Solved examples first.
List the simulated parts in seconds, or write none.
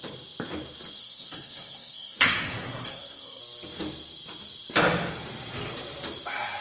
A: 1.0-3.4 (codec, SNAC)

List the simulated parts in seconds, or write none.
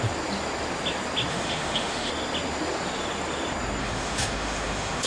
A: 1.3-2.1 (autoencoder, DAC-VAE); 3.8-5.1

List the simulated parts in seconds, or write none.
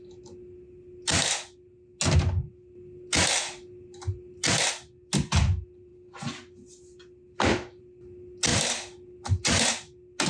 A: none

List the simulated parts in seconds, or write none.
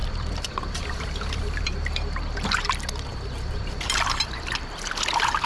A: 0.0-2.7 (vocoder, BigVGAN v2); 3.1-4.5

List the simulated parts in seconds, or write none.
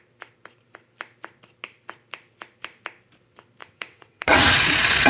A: 3.6-5.1 (vocoder, WaveNeXt)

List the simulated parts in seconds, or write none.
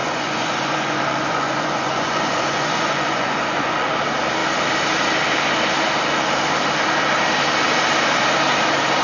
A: 0.0-3.9 (vocoder, Vocos)